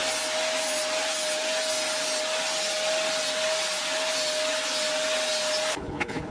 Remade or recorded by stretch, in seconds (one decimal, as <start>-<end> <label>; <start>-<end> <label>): 0.0-5.7 recorded; 5.7-6.3 remade